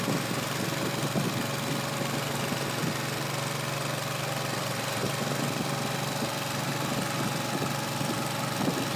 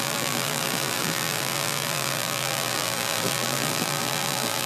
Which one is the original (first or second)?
first